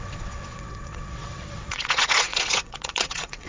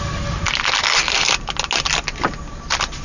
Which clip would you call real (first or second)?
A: second